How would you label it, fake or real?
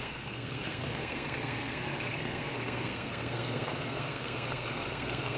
fake